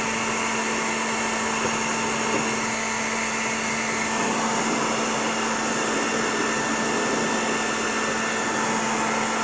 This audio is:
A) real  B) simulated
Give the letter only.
A